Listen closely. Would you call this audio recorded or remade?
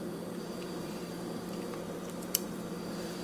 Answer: remade